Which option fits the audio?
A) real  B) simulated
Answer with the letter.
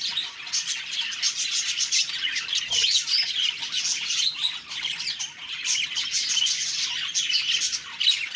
A